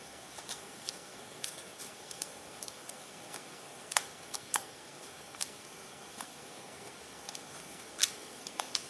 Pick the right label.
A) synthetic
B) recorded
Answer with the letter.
A